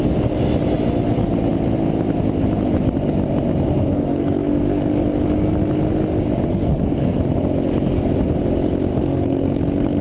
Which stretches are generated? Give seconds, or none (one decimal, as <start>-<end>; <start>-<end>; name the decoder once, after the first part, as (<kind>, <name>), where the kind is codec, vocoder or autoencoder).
3.7-4.9 (codec, SNAC); 6.5-7.2; 8.9-9.6